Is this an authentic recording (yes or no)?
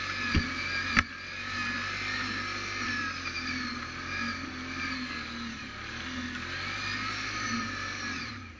yes